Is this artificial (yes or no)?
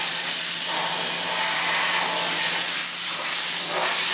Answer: no